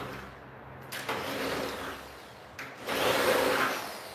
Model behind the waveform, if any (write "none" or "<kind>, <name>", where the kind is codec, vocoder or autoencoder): none